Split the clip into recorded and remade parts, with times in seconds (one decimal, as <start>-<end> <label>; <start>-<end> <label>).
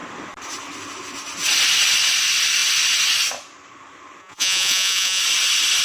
0.0-4.2 recorded; 4.2-5.2 remade; 5.2-5.8 recorded